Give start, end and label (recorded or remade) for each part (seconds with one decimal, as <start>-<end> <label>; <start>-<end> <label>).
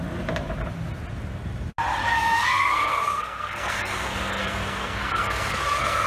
0.0-2.1 recorded; 2.1-6.1 remade